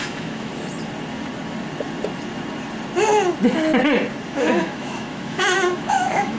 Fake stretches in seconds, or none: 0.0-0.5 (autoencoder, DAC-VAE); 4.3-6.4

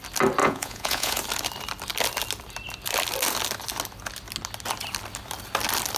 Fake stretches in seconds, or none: 0.4-1.2 (vocoder, Vocos)

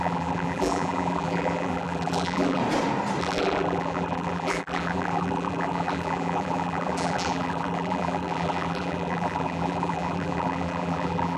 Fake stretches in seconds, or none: 0.0-2.6 (vocoder, BigVGAN v2); 3.2-11.4

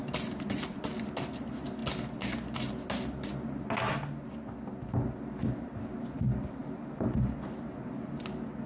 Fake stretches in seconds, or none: none